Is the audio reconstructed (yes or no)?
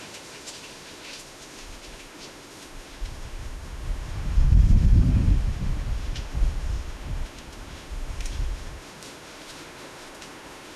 yes